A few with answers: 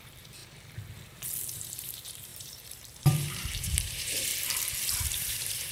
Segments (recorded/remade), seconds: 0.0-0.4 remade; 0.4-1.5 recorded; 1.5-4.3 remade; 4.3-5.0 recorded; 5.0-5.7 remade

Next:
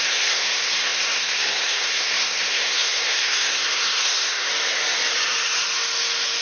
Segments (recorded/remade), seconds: 0.0-4.5 remade; 4.5-6.4 recorded

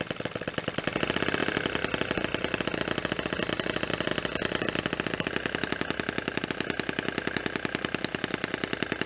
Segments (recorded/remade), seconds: 0.0-9.1 recorded

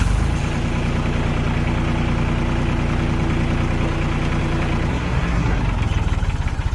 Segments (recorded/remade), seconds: 0.0-4.9 recorded; 4.9-5.6 remade; 5.6-6.7 recorded

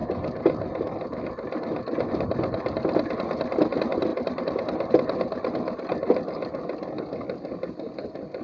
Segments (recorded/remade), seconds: 0.0-4.1 recorded; 4.1-4.9 remade; 4.9-8.4 recorded

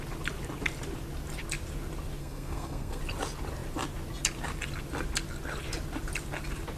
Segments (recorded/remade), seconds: 0.0-2.2 recorded; 2.2-3.0 remade; 3.0-6.8 recorded